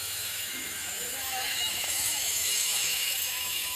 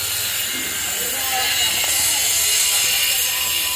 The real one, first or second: second